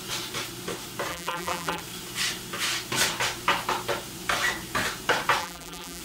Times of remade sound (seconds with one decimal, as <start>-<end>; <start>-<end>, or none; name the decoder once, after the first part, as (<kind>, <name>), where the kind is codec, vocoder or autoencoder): 1.1-1.8 (vocoder, BigVGAN v2); 5.4-6.0